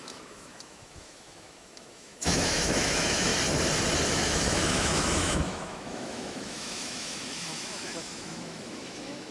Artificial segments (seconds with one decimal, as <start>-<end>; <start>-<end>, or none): 0.0-3.3; 4.1-9.3